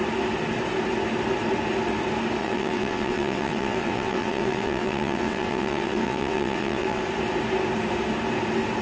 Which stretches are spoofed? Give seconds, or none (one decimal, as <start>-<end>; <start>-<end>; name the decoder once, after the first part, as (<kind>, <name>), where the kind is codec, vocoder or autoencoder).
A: 2.4-7.0 (vocoder, WaveNeXt)